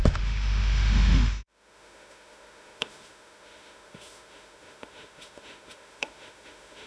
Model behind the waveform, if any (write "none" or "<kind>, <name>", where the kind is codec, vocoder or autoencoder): autoencoder, DAC-VAE